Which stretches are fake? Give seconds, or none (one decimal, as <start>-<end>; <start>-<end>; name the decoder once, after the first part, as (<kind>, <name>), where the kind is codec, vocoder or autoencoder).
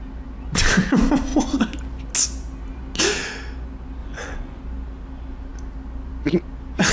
4.0-4.6 (vocoder, Vocos)